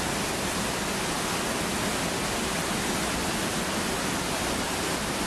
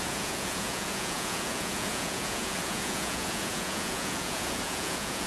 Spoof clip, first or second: second